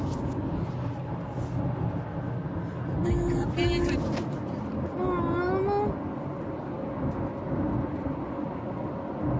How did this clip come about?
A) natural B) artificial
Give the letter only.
A